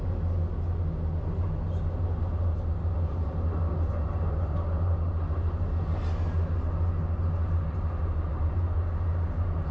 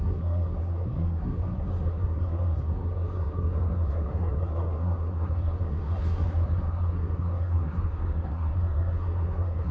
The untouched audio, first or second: first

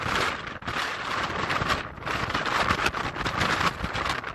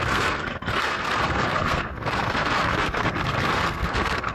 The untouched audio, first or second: first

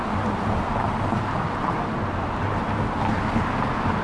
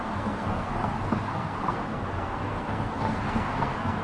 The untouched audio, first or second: first